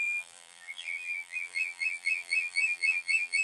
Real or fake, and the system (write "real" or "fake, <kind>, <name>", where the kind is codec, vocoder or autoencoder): fake, vocoder, BigVGAN v2